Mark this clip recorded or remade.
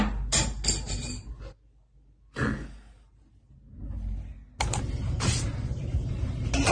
recorded